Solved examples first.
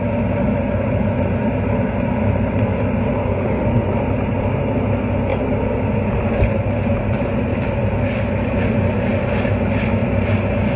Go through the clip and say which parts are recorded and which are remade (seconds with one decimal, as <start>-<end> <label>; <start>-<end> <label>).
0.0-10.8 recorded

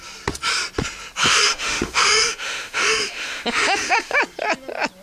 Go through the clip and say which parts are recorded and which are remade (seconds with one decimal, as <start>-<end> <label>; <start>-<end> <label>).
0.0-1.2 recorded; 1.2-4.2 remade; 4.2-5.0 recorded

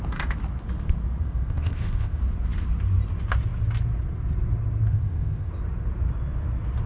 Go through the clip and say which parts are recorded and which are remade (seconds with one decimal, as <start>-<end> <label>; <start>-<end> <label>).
0.0-1.2 recorded; 1.2-2.2 remade; 2.2-4.9 recorded; 4.9-5.5 remade; 5.5-6.9 recorded

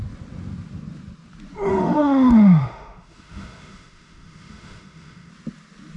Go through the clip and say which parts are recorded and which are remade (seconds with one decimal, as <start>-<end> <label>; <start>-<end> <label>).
0.0-1.7 recorded; 1.7-5.3 remade; 5.3-6.0 recorded

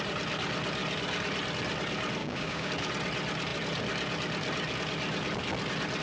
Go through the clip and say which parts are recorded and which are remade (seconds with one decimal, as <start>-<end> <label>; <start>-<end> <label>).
0.0-2.2 recorded; 2.2-2.7 remade; 2.7-6.0 recorded

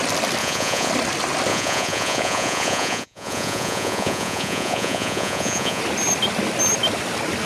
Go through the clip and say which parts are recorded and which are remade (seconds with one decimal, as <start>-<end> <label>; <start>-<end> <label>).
0.0-0.4 recorded; 0.4-0.9 remade; 0.9-1.5 recorded; 1.5-5.8 remade; 5.8-7.5 recorded

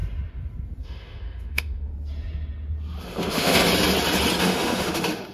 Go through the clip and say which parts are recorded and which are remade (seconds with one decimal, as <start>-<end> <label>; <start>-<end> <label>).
0.0-0.8 recorded; 0.8-1.9 remade; 1.9-3.0 recorded; 3.0-3.6 remade; 3.6-4.4 recorded; 4.4-5.3 remade